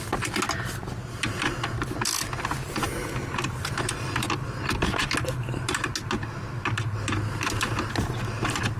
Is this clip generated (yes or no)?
no